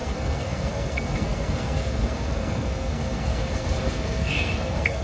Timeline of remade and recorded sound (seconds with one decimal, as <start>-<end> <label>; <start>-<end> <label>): 0.0-5.0 remade